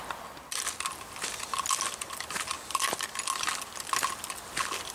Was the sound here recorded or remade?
recorded